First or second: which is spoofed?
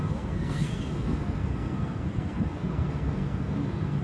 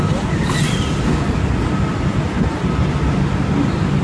first